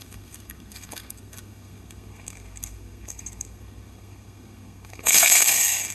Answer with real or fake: fake